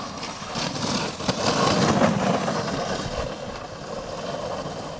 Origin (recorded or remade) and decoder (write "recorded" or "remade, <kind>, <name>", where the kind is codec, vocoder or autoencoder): recorded